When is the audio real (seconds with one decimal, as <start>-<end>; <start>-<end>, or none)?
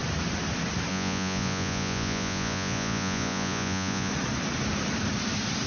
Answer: 0.0-0.9; 4.1-5.7